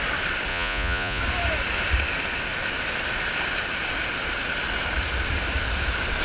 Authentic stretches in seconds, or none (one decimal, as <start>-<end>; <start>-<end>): 0.0-0.5; 1.2-6.2